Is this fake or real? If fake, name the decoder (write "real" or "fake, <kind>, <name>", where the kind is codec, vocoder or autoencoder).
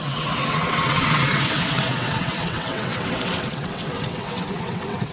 fake, vocoder, WaveNeXt